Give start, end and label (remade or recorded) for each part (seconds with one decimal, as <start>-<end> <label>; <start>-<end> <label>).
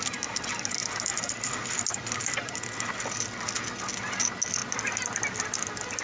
0.0-6.0 recorded